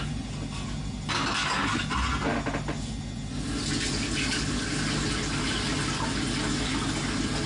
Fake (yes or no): no